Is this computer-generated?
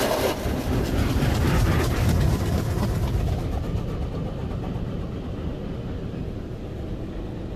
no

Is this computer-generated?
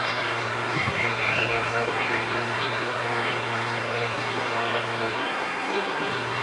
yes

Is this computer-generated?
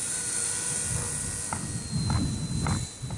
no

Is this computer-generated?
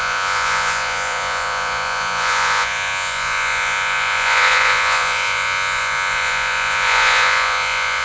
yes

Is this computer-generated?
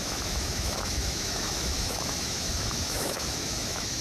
yes